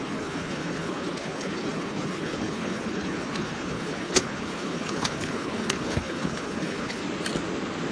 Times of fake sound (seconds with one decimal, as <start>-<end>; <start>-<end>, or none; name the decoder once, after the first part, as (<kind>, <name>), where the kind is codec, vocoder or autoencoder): 0.0-7.0 (codec, HILCodec)